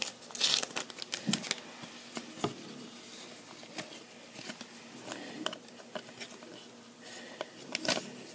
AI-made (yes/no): no